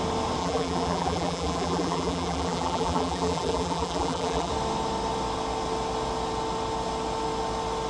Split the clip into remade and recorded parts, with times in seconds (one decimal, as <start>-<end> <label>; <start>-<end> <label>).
0.0-0.4 recorded; 0.4-4.5 remade; 4.5-7.9 recorded